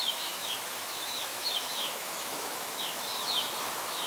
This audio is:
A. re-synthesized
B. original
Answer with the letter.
A